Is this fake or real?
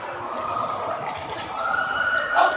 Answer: fake